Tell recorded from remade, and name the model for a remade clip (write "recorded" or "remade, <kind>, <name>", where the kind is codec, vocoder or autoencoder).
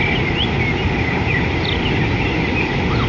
recorded